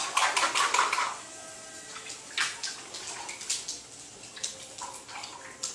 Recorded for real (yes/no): yes